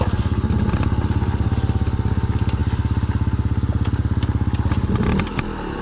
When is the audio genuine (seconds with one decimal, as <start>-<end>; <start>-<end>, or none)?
0.0-5.8